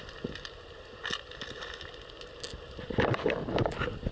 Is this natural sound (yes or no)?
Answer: yes